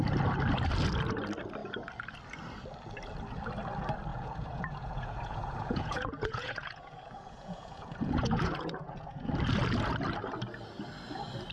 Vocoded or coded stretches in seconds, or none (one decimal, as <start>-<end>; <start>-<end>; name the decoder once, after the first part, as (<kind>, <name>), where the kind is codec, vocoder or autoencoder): 4.1-9.3 (vocoder, Vocos)